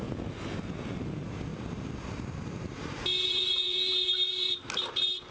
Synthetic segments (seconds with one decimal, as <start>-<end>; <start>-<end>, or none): 1.5-4.7